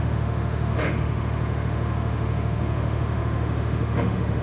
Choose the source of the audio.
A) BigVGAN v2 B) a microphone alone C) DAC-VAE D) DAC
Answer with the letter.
C